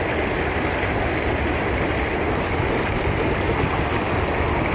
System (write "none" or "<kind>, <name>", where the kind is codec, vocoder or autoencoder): none